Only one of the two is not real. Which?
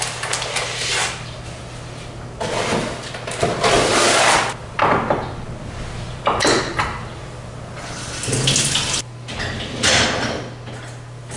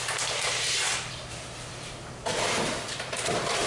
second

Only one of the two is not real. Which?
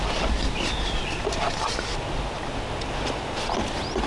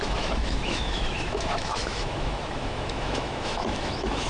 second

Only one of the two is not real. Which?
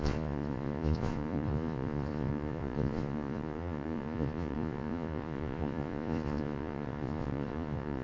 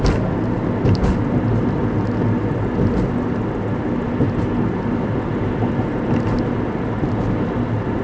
first